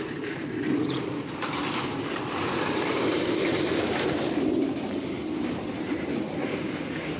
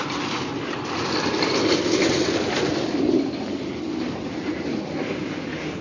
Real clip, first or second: second